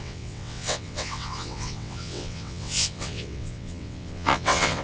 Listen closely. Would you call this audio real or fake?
fake